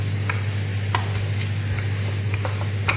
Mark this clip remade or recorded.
recorded